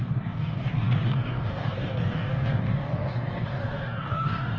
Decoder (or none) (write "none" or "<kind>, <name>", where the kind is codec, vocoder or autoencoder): codec, DAC